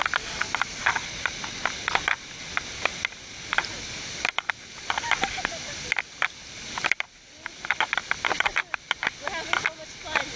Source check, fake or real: real